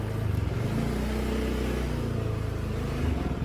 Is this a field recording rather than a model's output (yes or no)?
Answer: yes